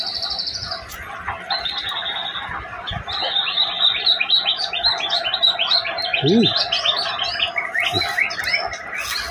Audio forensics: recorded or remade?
recorded